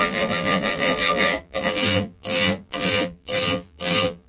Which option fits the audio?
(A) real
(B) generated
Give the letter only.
B